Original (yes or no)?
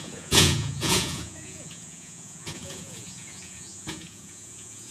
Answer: no